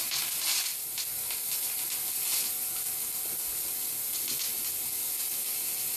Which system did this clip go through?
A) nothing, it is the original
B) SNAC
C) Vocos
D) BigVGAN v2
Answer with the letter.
A